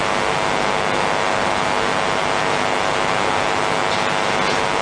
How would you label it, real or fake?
real